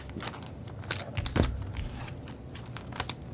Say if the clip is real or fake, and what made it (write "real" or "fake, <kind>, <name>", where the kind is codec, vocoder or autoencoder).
real